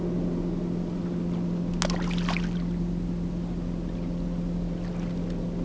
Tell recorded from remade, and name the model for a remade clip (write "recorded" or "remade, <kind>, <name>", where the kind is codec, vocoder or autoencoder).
recorded